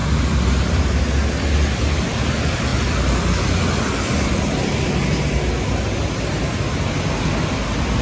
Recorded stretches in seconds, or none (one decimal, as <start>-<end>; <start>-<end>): 0.0-8.0